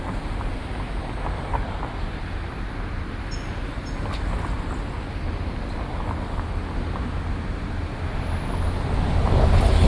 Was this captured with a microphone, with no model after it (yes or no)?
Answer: yes